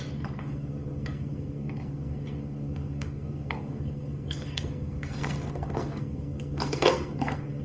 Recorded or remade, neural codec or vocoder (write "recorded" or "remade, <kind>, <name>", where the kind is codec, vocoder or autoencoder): remade, codec, SNAC